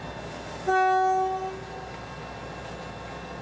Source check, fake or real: real